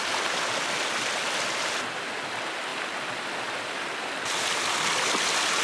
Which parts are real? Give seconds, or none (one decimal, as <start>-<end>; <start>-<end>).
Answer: 0.0-5.6